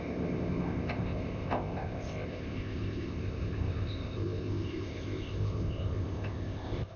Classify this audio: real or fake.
fake